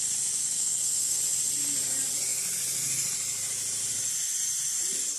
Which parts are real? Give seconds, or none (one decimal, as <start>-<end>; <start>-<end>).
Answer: 0.0-0.4; 1.2-5.2